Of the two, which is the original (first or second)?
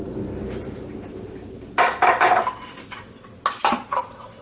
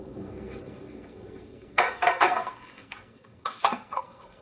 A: first